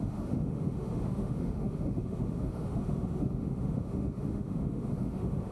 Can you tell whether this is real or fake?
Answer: fake